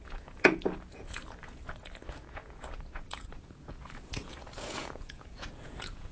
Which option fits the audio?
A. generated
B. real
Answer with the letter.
A